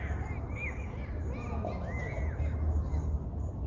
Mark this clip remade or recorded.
recorded